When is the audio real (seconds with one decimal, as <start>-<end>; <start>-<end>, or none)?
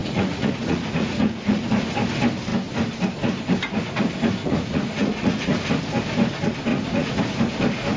1.9-4.4; 5.7-6.7; 7.2-8.0